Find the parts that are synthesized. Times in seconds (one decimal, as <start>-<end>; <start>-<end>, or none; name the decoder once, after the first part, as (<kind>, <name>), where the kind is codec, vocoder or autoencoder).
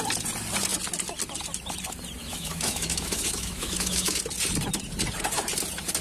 2.2-4.2 (autoencoder, DAC-VAE)